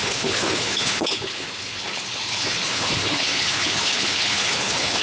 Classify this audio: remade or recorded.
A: remade